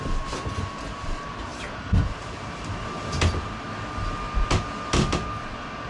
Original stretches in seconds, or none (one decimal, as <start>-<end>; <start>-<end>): 0.0-1.5; 2.8-5.9